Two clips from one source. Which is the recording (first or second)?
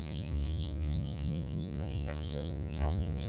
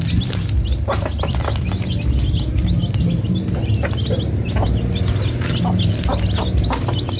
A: second